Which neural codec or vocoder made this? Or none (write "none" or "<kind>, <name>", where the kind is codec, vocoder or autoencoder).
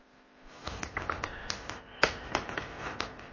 vocoder, BigVGAN v2